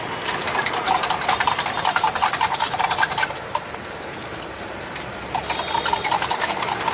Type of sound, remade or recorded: remade